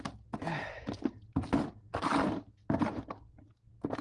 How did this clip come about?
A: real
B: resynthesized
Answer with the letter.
A